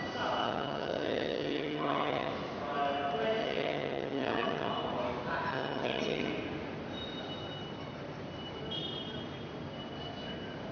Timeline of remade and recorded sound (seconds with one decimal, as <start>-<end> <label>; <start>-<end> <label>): 0.0-0.4 recorded; 0.4-2.3 remade; 2.3-3.4 recorded; 3.4-4.7 remade; 4.7-5.5 recorded; 5.5-6.3 remade; 6.3-10.7 recorded